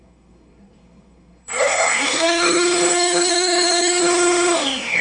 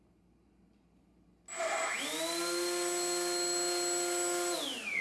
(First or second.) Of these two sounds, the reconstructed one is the first